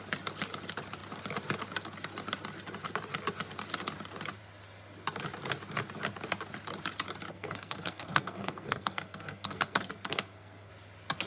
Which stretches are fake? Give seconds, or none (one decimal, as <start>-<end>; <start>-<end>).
7.3-10.7

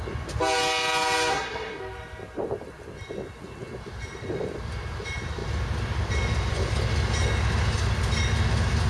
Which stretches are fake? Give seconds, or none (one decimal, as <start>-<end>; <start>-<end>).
1.3-1.8

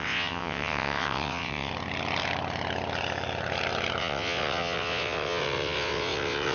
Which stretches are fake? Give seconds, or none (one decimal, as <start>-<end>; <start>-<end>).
0.0-1.7; 4.0-6.5

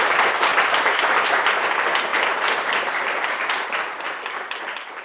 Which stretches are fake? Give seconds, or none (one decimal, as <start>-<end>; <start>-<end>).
none